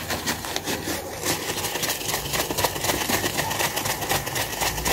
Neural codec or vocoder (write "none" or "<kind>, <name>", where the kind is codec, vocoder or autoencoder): none